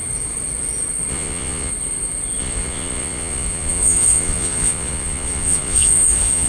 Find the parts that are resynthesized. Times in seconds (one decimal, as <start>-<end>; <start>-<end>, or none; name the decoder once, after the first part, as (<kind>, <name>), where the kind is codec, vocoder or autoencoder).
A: 1.1-1.7 (vocoder, Vocos); 2.4-6.5